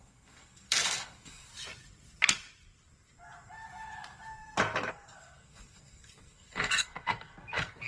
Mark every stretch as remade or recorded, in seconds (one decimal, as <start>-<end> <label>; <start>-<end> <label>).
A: 0.0-1.5 remade; 1.5-4.9 recorded; 4.9-7.9 remade